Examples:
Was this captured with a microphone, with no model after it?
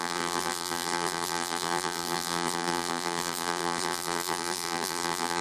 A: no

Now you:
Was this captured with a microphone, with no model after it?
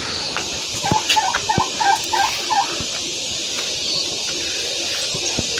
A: yes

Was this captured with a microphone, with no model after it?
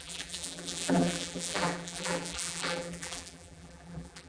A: no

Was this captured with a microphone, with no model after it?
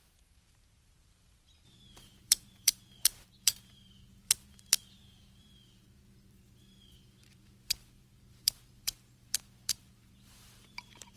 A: no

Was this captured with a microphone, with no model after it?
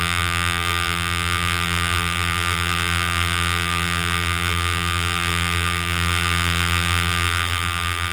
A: no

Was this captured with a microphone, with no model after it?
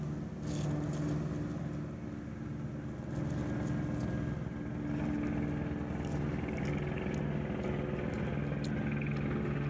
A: yes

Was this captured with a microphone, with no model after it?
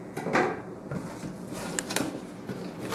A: yes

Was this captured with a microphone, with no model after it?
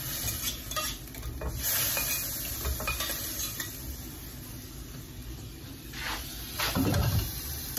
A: yes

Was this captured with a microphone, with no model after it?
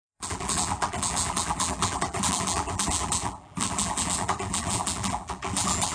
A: no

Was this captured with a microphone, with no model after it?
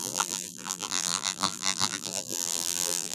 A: no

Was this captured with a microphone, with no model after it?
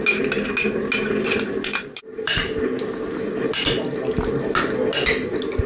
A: yes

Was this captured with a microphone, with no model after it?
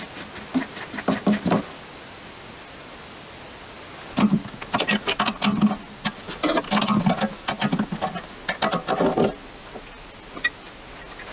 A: yes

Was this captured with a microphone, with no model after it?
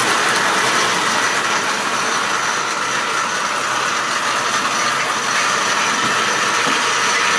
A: yes